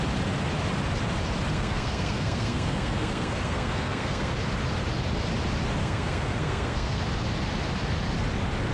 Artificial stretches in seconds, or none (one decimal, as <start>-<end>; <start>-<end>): 1.5-4.3; 5.8-7.0